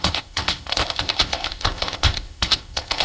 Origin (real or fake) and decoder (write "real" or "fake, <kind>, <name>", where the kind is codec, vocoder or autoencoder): fake, codec, ZipCodec